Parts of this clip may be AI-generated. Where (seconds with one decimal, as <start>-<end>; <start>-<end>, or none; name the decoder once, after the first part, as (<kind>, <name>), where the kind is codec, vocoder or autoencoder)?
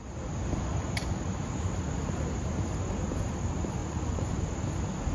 3.8-4.4 (vocoder, Vocos)